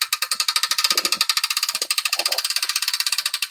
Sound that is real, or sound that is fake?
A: real